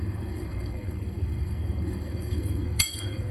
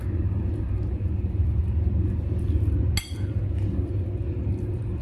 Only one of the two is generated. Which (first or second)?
first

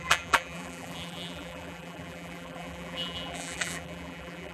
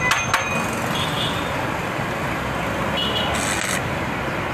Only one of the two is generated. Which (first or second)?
first